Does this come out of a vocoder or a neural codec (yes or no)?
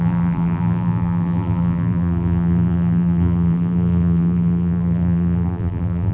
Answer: yes